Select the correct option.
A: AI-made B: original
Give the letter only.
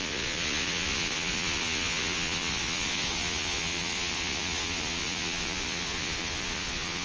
A